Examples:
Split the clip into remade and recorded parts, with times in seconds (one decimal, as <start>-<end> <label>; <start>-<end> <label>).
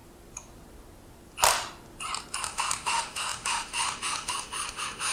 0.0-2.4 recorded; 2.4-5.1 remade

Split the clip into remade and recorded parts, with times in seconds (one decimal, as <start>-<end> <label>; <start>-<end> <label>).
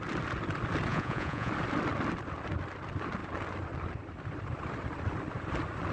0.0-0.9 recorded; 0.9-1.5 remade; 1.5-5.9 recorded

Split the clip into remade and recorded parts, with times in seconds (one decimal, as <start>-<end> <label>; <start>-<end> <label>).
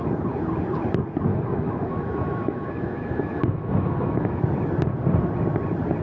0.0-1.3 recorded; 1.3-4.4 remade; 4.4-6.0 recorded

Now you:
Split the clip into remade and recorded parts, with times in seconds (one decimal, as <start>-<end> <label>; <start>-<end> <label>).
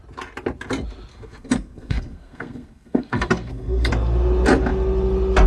0.0-1.1 recorded; 1.1-3.9 remade; 3.9-5.5 recorded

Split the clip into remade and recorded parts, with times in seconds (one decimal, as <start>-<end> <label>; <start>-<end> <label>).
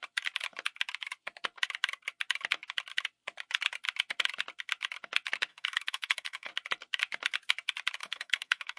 0.0-5.5 recorded; 5.5-6.5 remade; 6.5-8.0 recorded; 8.0-8.8 remade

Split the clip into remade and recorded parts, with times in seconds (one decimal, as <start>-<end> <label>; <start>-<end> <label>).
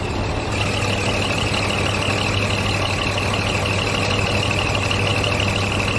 0.0-6.0 recorded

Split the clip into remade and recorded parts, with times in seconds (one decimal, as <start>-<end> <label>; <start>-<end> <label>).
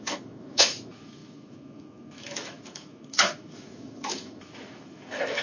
0.0-5.4 remade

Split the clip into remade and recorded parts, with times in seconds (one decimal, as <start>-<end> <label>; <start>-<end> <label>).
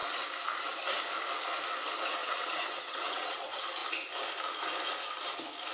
0.0-2.2 recorded; 2.2-3.4 remade; 3.4-5.7 recorded